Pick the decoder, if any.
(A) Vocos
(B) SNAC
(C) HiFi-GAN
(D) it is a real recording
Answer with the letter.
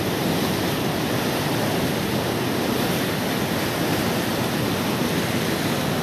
D